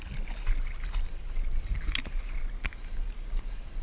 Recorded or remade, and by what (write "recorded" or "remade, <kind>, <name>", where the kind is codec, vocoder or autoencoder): recorded